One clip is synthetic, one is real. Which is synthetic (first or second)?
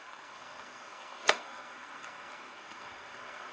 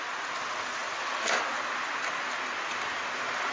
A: first